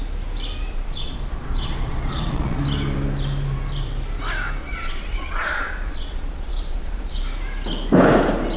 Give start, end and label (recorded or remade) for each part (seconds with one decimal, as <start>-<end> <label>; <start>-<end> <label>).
0.0-0.7 recorded; 0.7-2.6 remade; 2.6-4.6 recorded; 4.6-7.3 remade; 7.3-8.6 recorded